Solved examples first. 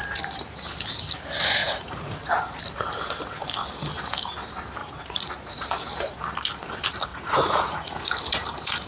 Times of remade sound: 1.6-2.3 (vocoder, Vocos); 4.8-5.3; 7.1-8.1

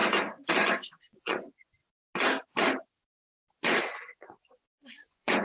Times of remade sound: 0.5-1.8 (vocoder, Vocos); 3.8-5.4

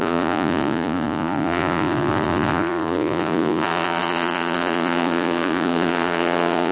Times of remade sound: 0.0-6.7 (vocoder, Vocos)

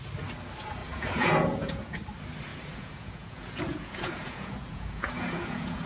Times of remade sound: 0.8-2.0 (vocoder, Vocos); 2.5-5.9

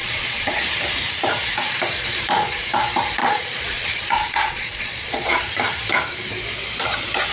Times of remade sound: 0.0-0.6 (vocoder, Vocos); 2.1-2.6; 3.2-5.5